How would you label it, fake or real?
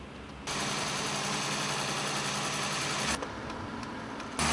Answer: real